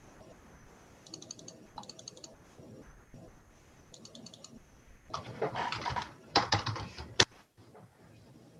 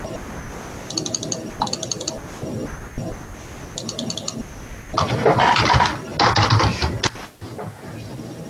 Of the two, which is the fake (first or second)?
first